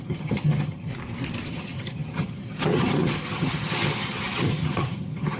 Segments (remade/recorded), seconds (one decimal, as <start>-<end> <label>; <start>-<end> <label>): 0.0-0.9 remade; 0.9-1.5 recorded; 1.5-5.4 remade

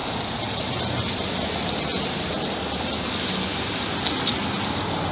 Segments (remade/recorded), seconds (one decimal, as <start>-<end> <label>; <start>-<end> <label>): 0.0-5.1 recorded